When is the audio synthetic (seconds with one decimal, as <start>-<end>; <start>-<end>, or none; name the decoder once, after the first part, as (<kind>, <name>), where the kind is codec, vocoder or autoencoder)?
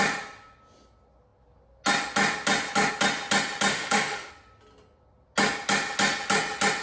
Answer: 3.7-4.3 (autoencoder, DAC-VAE)